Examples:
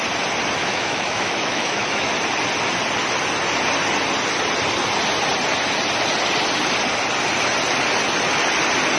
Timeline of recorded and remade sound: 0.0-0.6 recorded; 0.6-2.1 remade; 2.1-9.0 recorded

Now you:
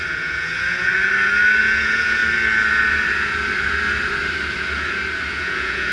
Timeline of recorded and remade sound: 0.0-0.9 remade; 0.9-1.6 recorded; 1.6-2.2 remade; 2.2-5.3 recorded; 5.3-5.9 remade

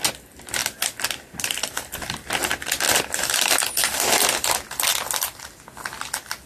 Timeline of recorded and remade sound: 0.0-4.9 recorded; 4.9-5.5 remade; 5.5-6.5 recorded